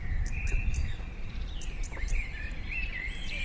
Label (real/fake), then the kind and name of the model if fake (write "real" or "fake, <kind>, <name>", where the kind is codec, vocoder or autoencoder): fake, vocoder, BigVGAN v2